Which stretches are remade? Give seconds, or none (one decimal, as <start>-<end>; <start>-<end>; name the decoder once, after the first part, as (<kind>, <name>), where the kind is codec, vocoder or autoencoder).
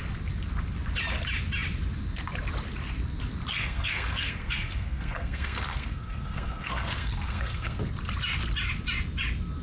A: 3.5-7.9 (codec, SNAC)